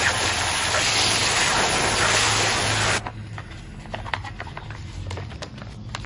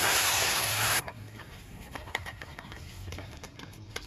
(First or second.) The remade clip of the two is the second